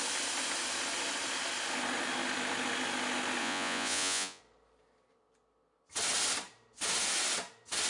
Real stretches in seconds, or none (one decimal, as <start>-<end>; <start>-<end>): 0.0-3.4; 4.4-7.9